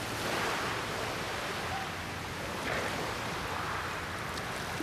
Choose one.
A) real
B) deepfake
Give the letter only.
A